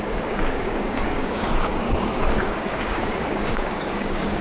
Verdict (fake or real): fake